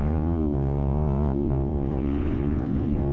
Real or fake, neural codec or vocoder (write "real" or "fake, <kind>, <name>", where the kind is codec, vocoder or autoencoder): fake, vocoder, Vocos